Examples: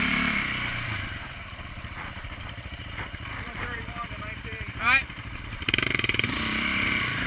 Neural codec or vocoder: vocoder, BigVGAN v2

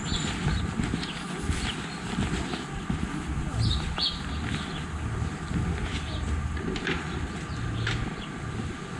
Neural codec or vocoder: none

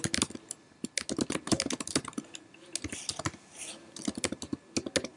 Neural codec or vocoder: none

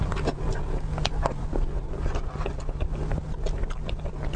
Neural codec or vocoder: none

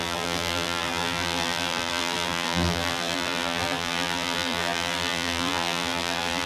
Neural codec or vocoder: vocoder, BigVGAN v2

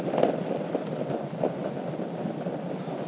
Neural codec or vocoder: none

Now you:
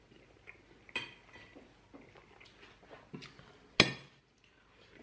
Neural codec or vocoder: none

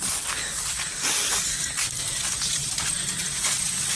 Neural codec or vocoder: none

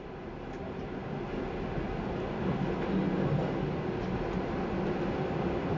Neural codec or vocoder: none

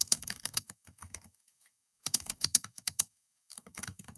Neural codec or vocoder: codec, DAC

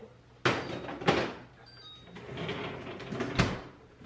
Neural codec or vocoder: none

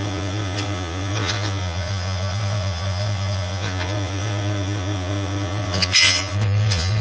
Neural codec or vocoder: vocoder, Vocos